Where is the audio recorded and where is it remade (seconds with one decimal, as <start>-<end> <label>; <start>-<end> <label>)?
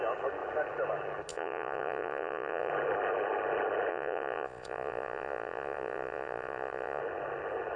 0.0-1.3 recorded; 1.3-2.7 remade; 2.7-3.9 recorded; 3.9-7.0 remade; 7.0-7.8 recorded